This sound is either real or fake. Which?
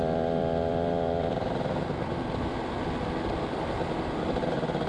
fake